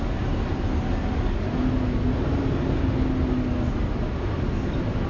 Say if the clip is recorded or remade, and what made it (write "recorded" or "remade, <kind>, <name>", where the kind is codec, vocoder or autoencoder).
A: recorded